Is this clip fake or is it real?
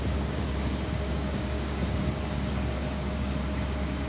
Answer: fake